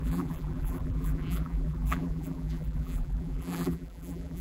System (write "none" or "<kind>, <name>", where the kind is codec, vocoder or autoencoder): vocoder, BigVGAN v2